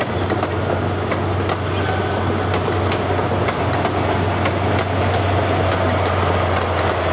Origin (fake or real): real